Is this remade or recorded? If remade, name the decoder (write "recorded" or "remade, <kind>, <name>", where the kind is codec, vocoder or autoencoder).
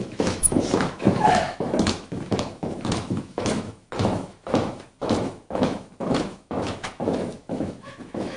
remade, autoencoder, DAC-VAE